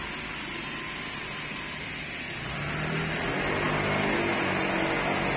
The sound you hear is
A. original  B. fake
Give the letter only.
A